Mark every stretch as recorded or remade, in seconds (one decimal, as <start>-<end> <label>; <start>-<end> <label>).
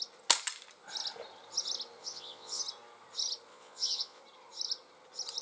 0.0-2.0 recorded; 2.0-2.6 remade; 2.6-3.5 recorded; 3.5-4.2 remade; 4.2-5.4 recorded